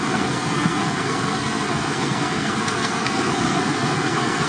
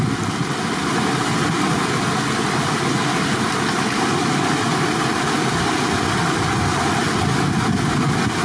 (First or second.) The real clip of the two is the second